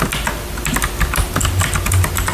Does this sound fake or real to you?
real